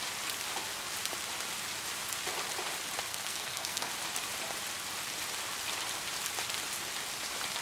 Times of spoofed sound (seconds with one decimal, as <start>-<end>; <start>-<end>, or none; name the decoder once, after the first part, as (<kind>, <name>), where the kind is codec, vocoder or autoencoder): 3.1-3.9 (codec, SNAC)